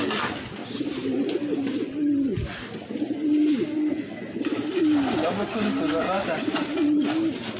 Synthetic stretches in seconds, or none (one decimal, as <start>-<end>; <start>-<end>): none

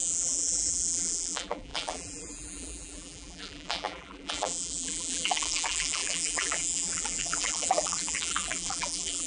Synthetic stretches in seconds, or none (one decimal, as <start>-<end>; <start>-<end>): 0.0-9.3

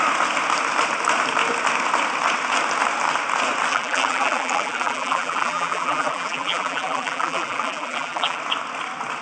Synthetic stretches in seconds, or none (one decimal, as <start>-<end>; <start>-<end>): 3.7-8.4

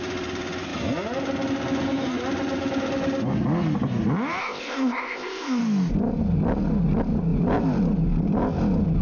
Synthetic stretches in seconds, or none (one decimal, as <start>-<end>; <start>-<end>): 4.4-5.6

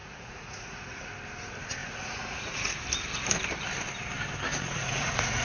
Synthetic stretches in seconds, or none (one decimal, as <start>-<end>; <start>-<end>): 0.0-1.0; 1.8-2.8; 4.5-5.4